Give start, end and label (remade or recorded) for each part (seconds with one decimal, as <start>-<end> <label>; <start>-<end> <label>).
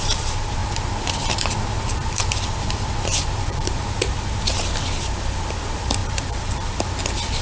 0.0-0.6 recorded; 0.6-3.8 remade; 3.8-6.0 recorded; 6.0-7.4 remade